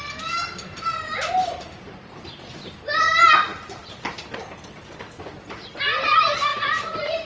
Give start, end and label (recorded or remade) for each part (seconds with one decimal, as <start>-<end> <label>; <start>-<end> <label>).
0.0-6.5 recorded; 6.5-7.3 remade